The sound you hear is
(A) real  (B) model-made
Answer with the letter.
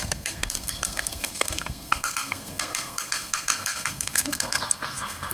B